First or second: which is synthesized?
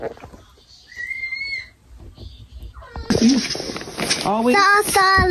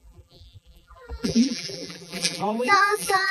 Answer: second